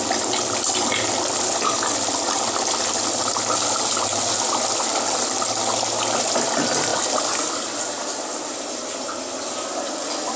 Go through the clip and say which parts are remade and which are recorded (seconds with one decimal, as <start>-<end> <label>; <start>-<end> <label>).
0.0-10.4 recorded